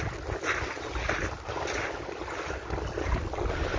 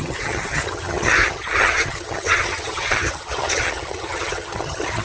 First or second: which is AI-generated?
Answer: second